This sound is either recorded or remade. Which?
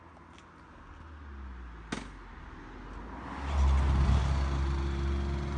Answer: recorded